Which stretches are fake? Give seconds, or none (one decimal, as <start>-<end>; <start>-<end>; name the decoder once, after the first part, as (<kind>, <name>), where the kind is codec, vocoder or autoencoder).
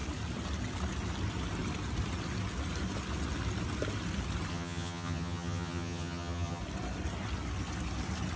4.5-6.6 (vocoder, HiFi-GAN)